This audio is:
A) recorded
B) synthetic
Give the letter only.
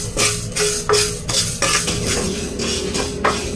A